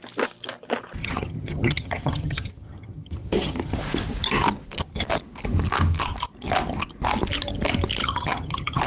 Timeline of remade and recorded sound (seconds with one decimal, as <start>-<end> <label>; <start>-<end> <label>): 0.0-1.0 recorded; 1.0-3.8 remade; 3.8-8.0 recorded; 8.0-8.9 remade